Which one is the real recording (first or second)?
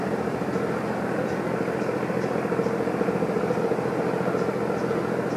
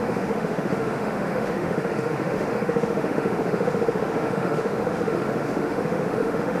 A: first